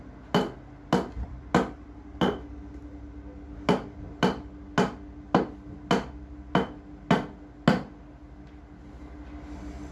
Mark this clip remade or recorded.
recorded